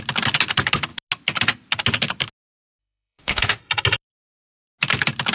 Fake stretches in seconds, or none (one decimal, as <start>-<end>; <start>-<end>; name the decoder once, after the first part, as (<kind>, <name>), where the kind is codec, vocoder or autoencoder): 2.8-3.6 (autoencoder, DAC-VAE)